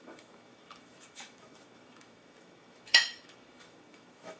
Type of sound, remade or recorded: remade